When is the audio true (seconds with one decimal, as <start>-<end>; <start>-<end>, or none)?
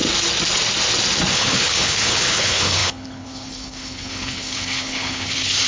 0.0-1.3